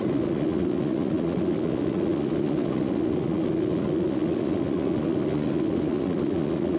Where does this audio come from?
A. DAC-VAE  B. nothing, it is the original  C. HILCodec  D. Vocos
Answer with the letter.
D